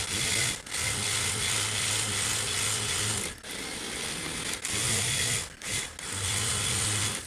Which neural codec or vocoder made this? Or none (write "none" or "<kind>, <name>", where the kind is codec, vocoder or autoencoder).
none